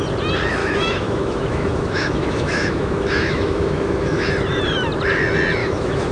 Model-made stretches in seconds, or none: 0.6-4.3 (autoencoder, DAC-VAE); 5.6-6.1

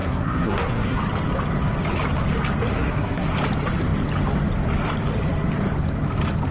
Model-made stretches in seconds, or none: 0.0-1.0 (codec, SNAC); 2.7-3.3

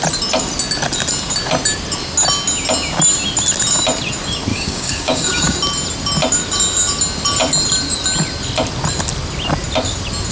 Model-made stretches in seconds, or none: 4.5-5.6 (codec, DAC)

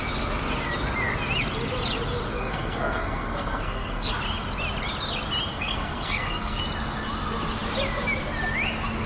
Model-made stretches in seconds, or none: 2.3-4.1 (codec, SNAC); 5.5-6.6